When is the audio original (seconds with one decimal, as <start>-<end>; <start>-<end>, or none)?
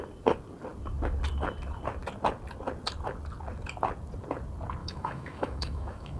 0.0-4.8